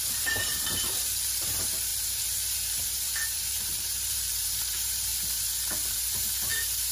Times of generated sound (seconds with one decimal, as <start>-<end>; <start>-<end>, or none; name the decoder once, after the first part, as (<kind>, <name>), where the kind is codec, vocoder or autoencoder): 0.0-5.1 (vocoder, BigVGAN v2); 5.9-6.9